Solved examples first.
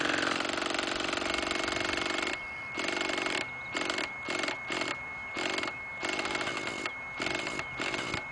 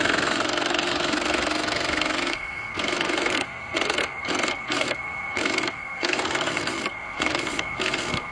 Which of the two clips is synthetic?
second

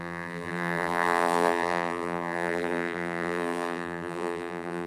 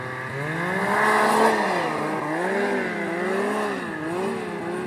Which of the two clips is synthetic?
first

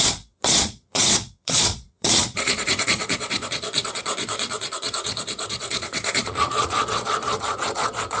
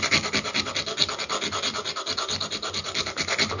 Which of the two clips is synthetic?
first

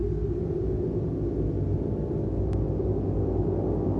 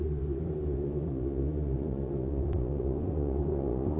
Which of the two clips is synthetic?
second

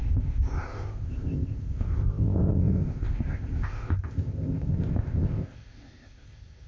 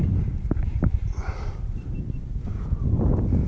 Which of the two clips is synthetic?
first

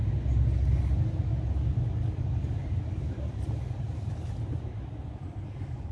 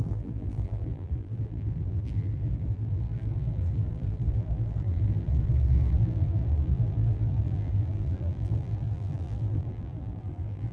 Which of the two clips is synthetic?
second